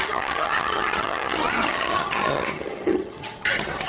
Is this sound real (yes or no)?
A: no